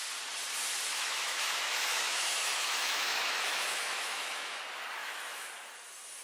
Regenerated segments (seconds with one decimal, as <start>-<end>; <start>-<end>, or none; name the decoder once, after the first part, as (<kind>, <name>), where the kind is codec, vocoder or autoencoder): 0.9-4.6 (autoencoder, DAC-VAE); 5.0-5.5